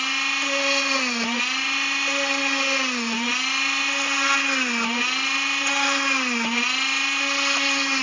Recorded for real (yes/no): yes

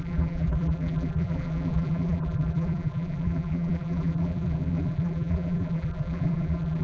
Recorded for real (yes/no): no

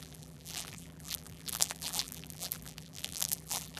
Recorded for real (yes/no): no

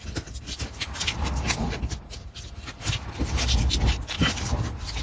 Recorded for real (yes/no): yes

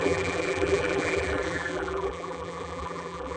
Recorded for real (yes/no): no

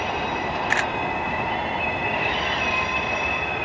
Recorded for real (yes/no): no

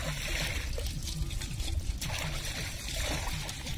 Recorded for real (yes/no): yes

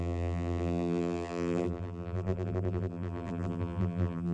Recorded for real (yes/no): no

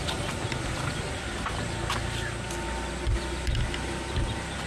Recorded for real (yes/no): yes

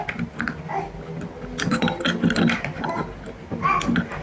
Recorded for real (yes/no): yes